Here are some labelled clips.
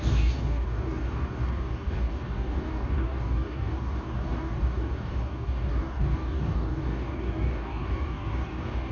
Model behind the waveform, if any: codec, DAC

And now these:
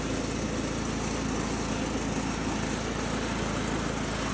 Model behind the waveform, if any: none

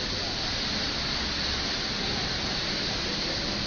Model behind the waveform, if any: none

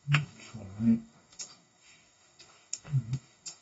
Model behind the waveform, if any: codec, DAC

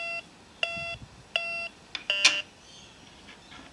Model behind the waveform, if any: none